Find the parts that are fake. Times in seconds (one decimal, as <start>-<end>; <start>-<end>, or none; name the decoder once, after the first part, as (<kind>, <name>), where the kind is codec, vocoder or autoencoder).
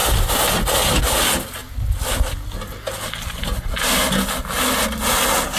none